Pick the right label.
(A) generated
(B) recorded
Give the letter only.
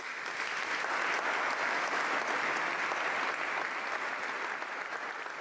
B